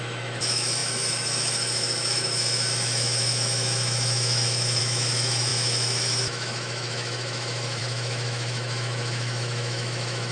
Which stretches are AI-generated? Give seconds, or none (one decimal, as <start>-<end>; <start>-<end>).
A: 0.0-10.3